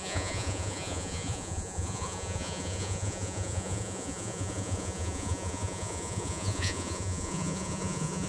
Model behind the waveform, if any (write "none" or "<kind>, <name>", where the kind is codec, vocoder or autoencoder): vocoder, Vocos